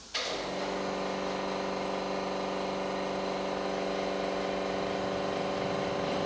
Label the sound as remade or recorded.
recorded